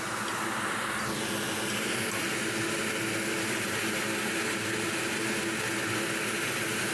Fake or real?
real